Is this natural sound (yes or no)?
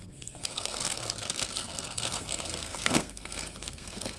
no